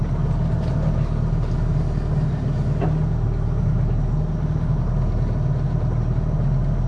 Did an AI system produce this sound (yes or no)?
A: no